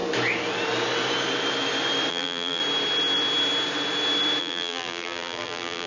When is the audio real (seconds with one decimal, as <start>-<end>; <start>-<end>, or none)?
0.0-2.1; 2.6-4.4